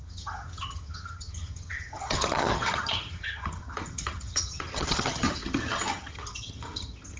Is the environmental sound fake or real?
fake